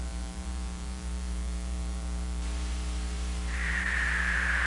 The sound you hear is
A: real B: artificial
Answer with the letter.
B